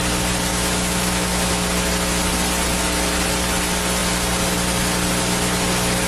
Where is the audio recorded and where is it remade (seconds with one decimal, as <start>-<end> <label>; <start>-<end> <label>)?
0.0-0.5 recorded; 0.5-1.5 remade; 1.5-6.1 recorded